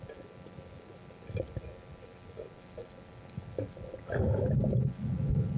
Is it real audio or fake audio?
real